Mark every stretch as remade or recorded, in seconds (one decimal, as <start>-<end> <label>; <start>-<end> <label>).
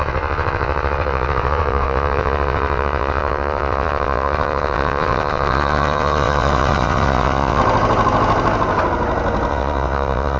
0.0-7.6 remade; 7.6-9.5 recorded; 9.5-10.4 remade